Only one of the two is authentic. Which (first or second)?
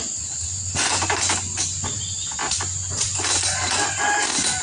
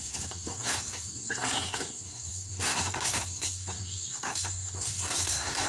first